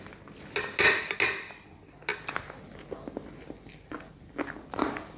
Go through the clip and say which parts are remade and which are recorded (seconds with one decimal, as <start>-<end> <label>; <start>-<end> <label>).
0.0-5.2 recorded